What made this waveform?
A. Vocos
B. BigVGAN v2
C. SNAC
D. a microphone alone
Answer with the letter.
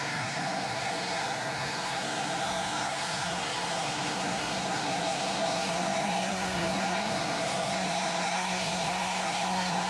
C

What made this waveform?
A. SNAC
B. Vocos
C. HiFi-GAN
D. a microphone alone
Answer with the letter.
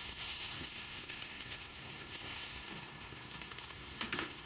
A